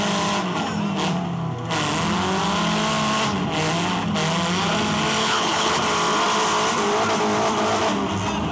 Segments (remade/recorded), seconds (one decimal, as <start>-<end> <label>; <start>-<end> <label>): 0.0-5.2 recorded; 5.2-5.8 remade; 5.8-8.5 recorded